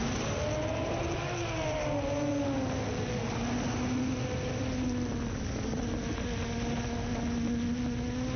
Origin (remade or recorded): recorded